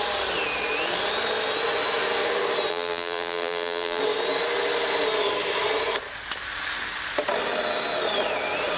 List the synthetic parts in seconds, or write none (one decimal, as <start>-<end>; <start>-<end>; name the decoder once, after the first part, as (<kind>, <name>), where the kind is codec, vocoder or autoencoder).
2.7-4.0 (vocoder, BigVGAN v2)